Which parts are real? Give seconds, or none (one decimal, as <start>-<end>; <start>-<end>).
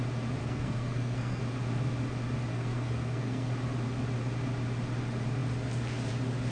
0.0-0.4; 1.4-2.5; 3.5-6.5